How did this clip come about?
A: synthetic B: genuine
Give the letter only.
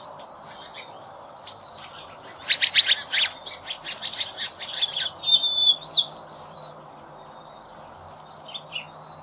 B